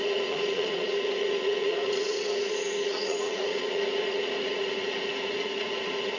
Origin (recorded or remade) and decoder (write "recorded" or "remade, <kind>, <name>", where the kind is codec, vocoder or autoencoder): remade, vocoder, Vocos